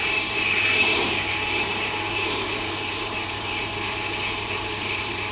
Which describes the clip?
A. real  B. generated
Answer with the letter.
B